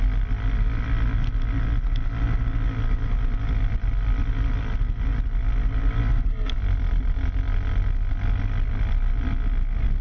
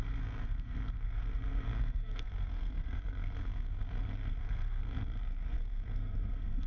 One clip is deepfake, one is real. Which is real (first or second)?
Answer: first